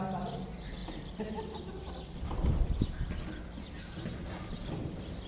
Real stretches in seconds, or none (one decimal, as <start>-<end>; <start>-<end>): 0.0-5.3